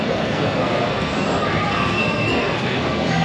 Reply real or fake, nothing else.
fake